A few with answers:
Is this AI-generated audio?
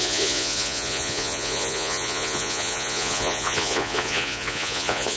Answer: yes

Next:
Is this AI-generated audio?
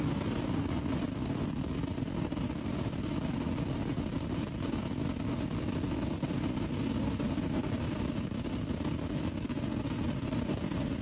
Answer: no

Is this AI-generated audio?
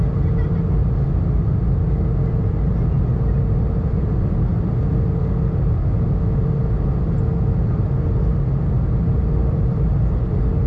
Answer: no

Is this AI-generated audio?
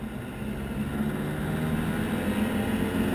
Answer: no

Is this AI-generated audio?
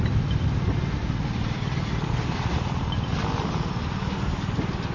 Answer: no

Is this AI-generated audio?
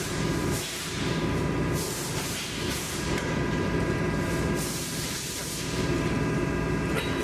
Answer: yes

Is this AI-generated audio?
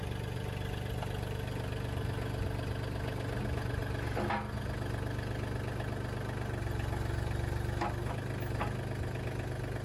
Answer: no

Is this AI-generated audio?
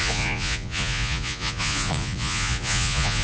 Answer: yes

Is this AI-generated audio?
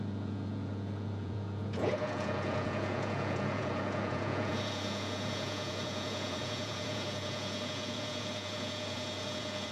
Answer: yes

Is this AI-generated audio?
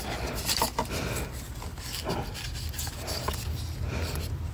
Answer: no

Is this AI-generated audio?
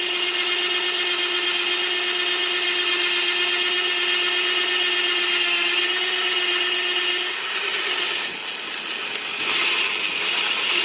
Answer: no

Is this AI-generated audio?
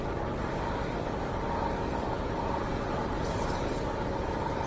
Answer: no